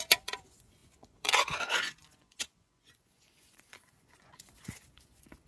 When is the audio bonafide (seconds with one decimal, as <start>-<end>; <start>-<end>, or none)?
none